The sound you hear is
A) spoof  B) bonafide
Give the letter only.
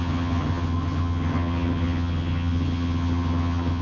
A